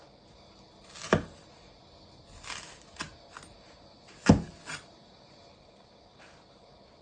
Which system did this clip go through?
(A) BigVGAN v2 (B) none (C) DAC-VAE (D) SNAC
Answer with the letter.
B